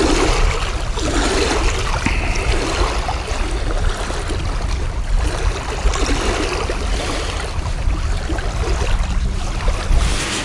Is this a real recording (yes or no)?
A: yes